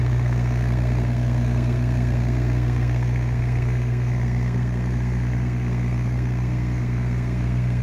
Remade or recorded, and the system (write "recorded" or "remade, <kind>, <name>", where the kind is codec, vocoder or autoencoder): remade, codec, SNAC